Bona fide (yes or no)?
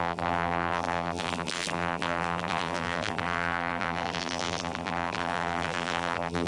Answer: no